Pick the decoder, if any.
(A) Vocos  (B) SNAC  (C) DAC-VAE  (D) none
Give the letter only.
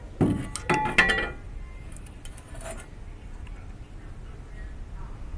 D